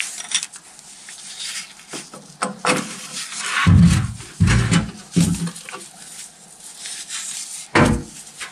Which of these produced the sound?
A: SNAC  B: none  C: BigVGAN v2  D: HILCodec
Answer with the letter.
B